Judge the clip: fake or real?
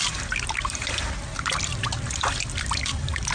real